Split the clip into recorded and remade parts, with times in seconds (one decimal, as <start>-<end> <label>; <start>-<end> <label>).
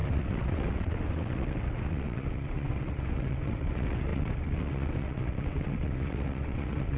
0.0-7.0 remade